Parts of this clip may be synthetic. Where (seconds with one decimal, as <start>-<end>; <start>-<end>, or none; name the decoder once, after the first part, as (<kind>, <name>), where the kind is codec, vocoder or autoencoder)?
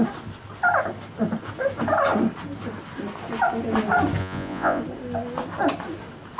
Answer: 4.2-4.8 (vocoder, Vocos)